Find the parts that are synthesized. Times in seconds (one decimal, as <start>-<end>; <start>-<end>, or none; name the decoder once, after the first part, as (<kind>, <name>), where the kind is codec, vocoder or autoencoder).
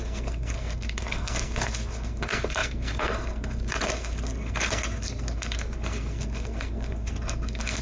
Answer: 0.0-7.8 (codec, SNAC)